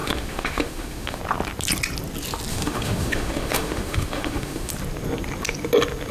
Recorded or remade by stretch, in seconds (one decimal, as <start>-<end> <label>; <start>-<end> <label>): 0.0-1.2 remade; 1.2-2.5 recorded; 2.5-4.7 remade; 4.7-6.1 recorded